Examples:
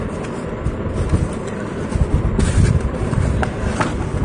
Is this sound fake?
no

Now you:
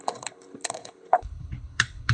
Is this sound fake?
yes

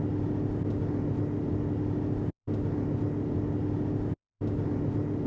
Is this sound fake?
no